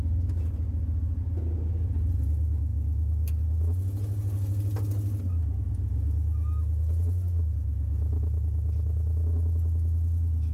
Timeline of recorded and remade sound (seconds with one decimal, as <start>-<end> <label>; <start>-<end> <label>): 0.0-10.5 recorded